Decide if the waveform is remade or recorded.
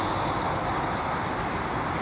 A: remade